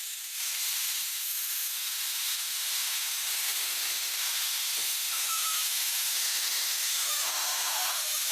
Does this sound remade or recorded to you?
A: remade